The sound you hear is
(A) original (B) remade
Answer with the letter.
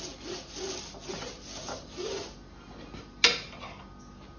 A